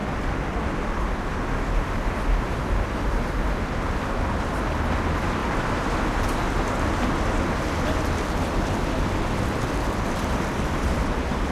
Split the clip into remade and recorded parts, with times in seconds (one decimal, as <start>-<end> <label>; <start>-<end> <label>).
0.0-3.6 remade; 3.6-5.4 recorded; 5.4-6.0 remade; 6.0-11.5 recorded